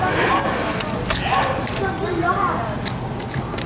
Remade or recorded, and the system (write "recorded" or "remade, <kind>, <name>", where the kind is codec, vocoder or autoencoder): recorded